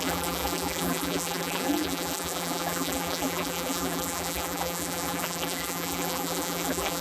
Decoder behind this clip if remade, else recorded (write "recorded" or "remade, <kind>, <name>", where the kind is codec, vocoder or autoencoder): remade, vocoder, BigVGAN v2